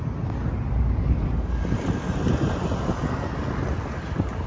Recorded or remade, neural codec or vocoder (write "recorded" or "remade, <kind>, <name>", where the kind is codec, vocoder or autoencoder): recorded